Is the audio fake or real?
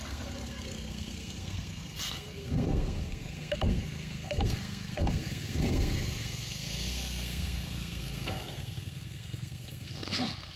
fake